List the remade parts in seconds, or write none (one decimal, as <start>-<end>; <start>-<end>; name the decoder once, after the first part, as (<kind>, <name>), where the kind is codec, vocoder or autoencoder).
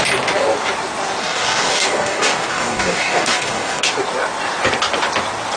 1.2-3.9 (codec, DAC)